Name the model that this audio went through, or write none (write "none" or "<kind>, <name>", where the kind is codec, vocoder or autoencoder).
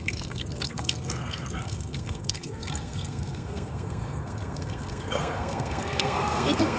codec, SNAC